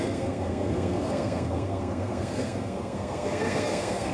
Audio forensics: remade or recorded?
remade